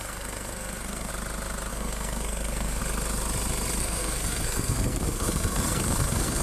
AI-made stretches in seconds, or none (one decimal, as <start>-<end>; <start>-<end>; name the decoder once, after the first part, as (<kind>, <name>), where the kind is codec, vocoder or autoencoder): 0.0-1.1 (codec, SNAC); 1.7-2.8; 3.8-6.4